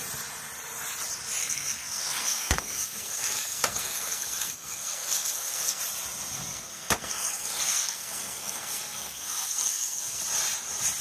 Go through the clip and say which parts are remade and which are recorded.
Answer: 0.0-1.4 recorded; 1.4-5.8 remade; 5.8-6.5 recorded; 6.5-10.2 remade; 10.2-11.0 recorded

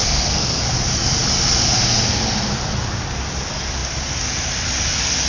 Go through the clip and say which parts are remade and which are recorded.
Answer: 0.0-0.7 remade; 0.7-5.3 recorded

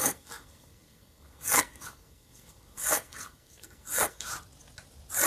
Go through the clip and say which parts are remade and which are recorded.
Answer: 0.0-4.3 remade; 4.3-5.3 recorded

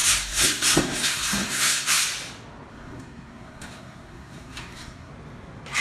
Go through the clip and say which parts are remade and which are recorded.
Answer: 0.0-2.0 remade; 2.0-2.7 recorded; 2.7-5.1 remade; 5.1-5.8 recorded

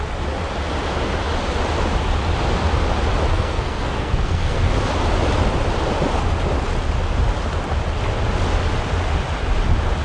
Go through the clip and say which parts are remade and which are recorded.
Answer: 0.0-3.3 recorded; 3.3-4.7 remade; 4.7-10.0 recorded

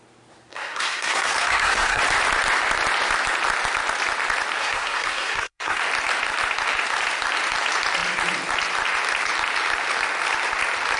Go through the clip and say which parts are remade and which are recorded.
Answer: 0.0-0.5 recorded; 0.5-2.0 remade; 2.0-4.6 recorded; 4.6-5.8 remade; 5.8-11.0 recorded

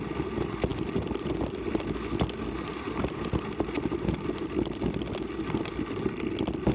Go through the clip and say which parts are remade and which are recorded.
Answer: 0.0-6.7 recorded

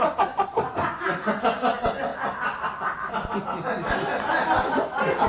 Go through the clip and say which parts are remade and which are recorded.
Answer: 0.0-5.3 recorded